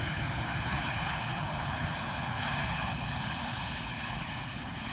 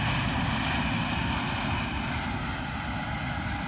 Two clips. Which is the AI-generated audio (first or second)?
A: first